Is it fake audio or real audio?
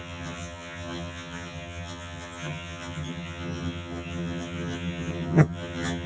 fake